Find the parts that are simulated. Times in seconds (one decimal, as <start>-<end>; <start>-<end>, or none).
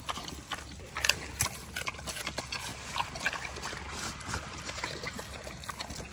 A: none